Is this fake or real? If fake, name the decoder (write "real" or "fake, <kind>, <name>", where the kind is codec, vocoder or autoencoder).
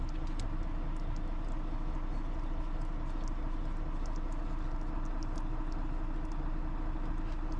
real